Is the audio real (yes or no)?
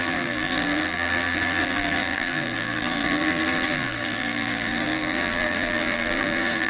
no